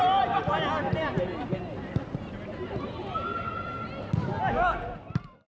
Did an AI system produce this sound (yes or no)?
no